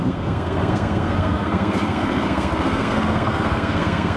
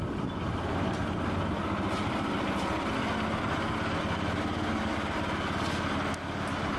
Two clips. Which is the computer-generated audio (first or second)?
first